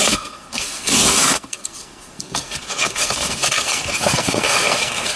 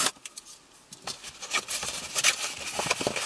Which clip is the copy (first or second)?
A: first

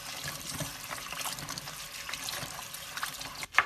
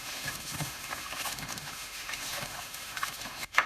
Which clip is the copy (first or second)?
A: second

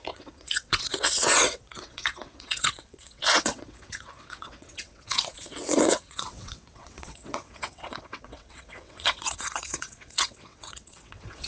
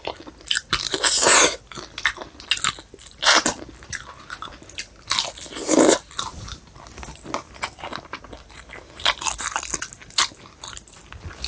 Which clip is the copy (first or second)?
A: first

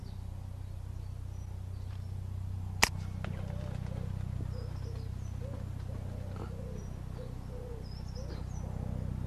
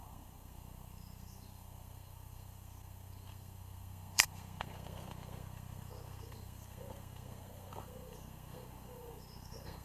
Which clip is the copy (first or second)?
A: second